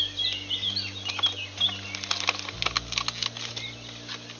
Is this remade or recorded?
recorded